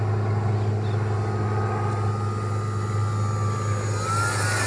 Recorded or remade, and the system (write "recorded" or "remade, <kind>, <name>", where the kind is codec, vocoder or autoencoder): recorded